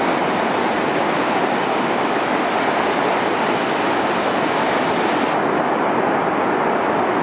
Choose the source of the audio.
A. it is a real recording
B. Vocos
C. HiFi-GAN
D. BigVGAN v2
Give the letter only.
A